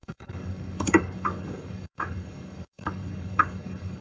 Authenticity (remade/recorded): remade